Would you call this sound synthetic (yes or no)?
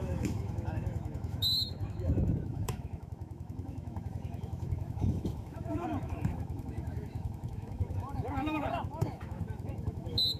yes